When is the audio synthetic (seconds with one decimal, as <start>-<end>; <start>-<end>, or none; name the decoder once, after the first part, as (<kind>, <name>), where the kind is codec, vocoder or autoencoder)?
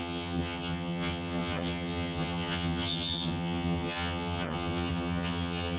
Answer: 0.0-5.8 (vocoder, HiFi-GAN)